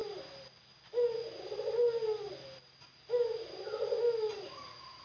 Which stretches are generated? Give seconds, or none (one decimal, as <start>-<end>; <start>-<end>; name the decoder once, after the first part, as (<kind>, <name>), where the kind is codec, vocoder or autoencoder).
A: none